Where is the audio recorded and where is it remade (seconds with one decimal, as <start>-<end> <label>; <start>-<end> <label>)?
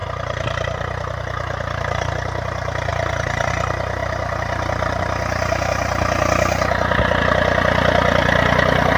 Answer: 0.0-2.1 remade; 2.1-2.9 recorded; 2.9-3.5 remade; 3.5-9.0 recorded